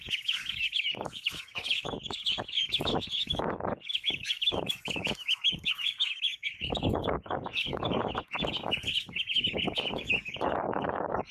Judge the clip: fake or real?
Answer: fake